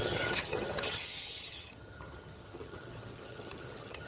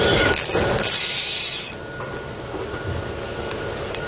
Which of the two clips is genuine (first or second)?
second